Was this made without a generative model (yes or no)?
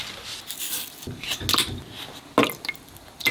yes